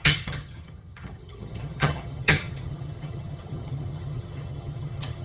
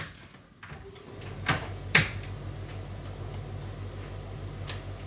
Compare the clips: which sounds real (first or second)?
second